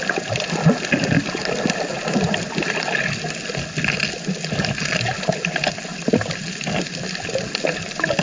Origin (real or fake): real